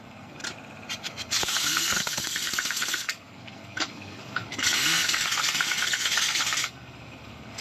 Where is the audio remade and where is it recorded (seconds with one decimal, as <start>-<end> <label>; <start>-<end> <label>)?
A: 0.0-0.4 remade; 0.4-1.0 recorded; 1.0-7.6 remade